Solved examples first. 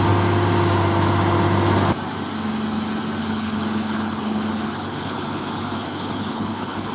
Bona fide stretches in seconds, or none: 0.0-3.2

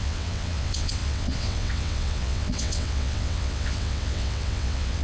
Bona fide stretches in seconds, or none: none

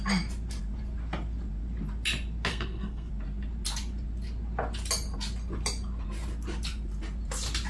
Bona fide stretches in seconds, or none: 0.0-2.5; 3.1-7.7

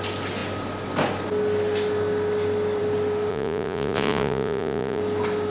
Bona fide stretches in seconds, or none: 0.0-3.3; 5.0-5.5

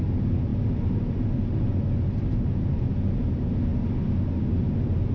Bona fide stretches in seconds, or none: 0.0-5.1

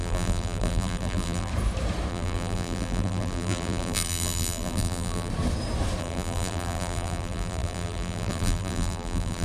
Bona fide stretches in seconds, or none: 1.5-2.1; 5.3-6.0